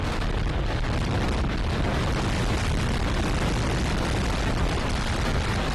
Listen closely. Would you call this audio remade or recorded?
recorded